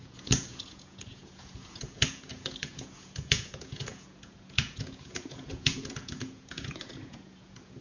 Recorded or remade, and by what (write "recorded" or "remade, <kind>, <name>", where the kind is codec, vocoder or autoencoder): remade, vocoder, Vocos